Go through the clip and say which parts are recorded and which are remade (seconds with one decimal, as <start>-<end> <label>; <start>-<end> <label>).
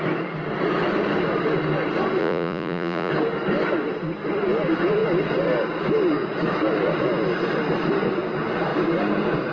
0.0-2.2 recorded; 2.2-3.1 remade; 3.1-9.5 recorded